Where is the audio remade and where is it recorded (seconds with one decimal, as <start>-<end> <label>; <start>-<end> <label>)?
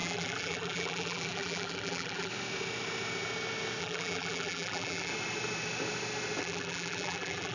0.0-2.3 remade; 2.3-3.8 recorded; 3.8-5.1 remade; 5.1-6.4 recorded; 6.4-7.5 remade